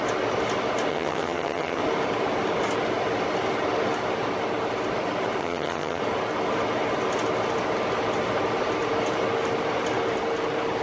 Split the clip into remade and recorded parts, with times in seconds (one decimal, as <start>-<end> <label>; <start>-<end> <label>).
0.0-0.9 recorded; 0.9-1.8 remade; 1.8-5.4 recorded; 5.4-6.0 remade; 6.0-10.8 recorded